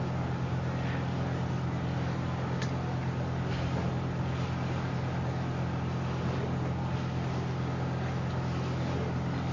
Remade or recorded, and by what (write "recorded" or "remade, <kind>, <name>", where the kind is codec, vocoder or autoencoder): recorded